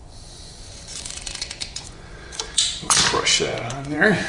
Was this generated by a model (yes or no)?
yes